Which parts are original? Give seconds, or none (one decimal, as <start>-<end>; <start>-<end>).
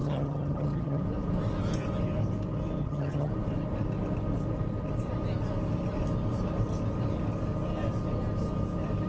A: 1.0-2.8; 3.3-9.1